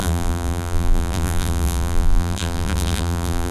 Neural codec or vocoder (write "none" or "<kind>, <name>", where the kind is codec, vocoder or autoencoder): vocoder, BigVGAN v2